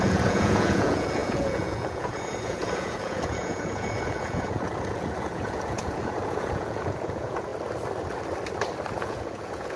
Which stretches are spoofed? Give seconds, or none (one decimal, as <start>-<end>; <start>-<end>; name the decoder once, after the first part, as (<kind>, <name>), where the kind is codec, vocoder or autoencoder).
0.0-7.5 (vocoder, Vocos); 8.9-9.8